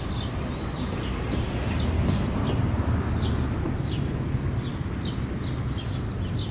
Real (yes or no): yes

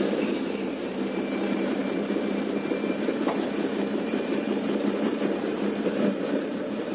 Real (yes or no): no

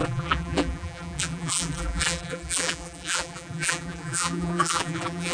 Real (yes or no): no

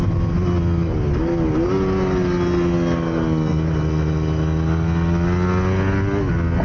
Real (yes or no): yes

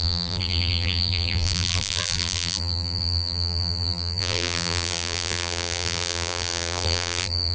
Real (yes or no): no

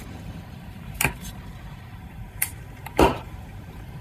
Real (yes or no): no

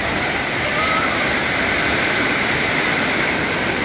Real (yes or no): no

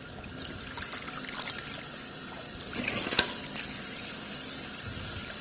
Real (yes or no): no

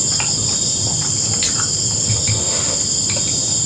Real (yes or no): no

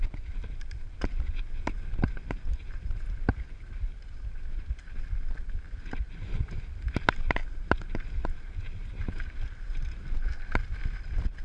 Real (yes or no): yes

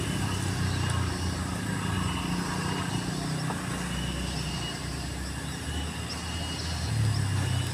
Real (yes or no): yes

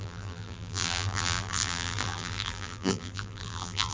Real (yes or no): no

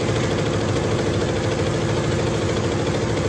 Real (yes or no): yes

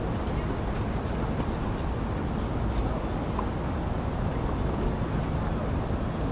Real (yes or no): yes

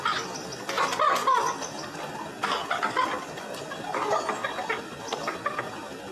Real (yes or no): yes